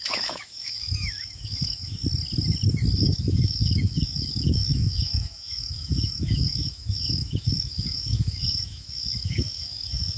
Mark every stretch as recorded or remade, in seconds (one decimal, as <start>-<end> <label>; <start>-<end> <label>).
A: 0.0-2.0 remade; 2.0-3.0 recorded; 3.0-10.2 remade